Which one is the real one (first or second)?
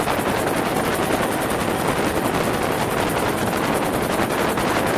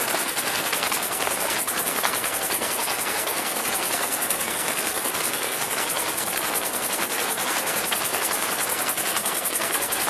first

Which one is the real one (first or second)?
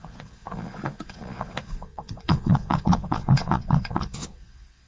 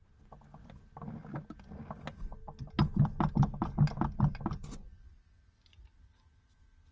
second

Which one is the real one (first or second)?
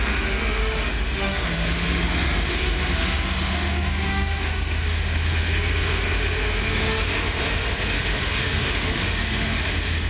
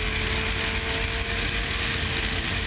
second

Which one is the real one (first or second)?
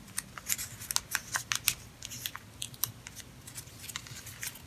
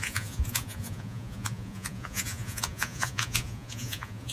first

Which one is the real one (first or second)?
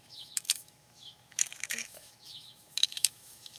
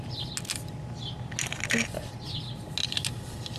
second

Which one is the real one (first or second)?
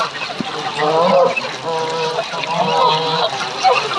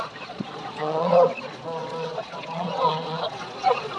first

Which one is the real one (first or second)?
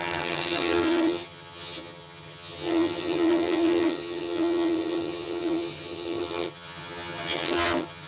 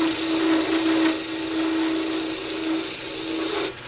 second